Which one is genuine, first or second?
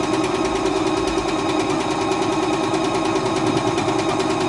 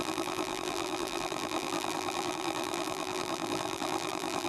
first